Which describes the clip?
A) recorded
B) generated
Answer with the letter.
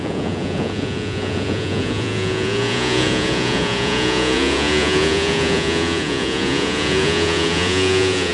B